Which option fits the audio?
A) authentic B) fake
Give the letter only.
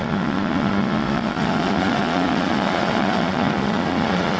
B